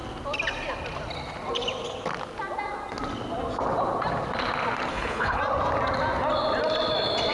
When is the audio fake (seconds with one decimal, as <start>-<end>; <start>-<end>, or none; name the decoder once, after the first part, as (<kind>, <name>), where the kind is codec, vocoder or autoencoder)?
4.9-5.4 (codec, HILCodec)